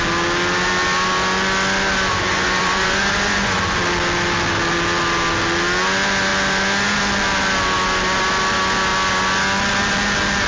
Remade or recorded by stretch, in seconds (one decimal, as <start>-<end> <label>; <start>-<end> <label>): 0.0-2.1 recorded; 2.1-3.8 remade; 3.8-10.5 recorded